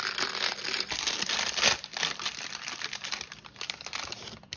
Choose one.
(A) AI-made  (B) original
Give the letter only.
B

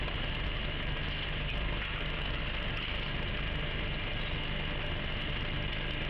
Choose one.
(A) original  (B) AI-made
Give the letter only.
A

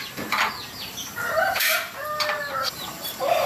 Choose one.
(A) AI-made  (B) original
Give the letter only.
A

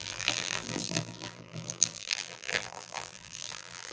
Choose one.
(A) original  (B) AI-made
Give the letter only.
B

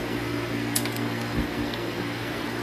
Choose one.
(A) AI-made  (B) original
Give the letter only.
A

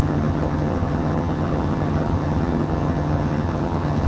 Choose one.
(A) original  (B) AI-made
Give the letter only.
B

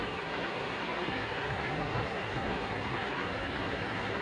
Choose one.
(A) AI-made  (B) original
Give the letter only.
A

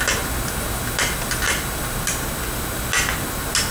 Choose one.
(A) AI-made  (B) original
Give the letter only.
B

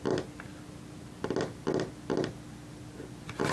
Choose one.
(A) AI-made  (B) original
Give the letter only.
B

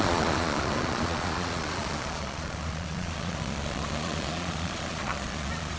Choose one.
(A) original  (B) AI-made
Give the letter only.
B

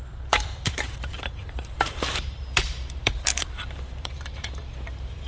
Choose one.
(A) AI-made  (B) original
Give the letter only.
A